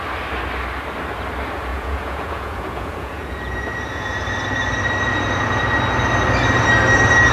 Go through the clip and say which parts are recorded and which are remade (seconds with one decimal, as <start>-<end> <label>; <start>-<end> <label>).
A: 0.0-1.7 recorded; 1.7-4.2 remade; 4.2-5.1 recorded; 5.1-5.6 remade; 5.6-7.3 recorded